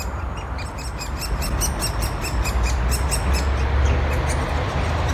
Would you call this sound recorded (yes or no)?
yes